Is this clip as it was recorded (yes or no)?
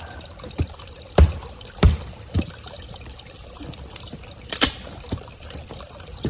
no